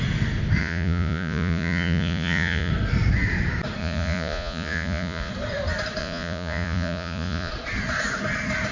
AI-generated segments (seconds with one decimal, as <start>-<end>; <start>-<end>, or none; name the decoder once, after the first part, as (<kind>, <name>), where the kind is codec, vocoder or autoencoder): 0.6-2.7 (vocoder, Vocos); 3.8-5.3; 6.0-7.5